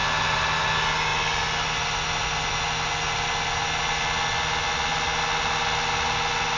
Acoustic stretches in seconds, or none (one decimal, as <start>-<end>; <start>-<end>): 0.0-6.6